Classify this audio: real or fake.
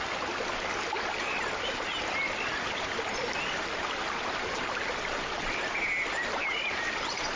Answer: real